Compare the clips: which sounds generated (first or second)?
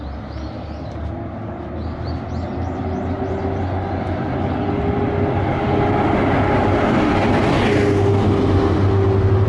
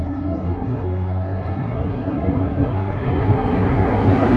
second